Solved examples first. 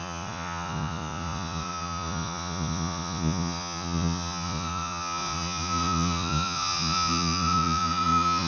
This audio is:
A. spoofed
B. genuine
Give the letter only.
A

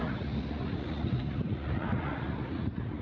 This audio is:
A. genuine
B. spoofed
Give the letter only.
B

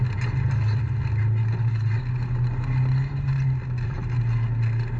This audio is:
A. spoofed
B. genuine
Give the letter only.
B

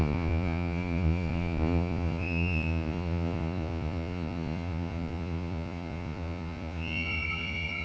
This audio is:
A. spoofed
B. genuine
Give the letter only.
A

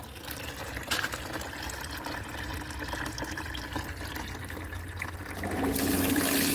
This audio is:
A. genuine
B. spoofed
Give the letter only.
A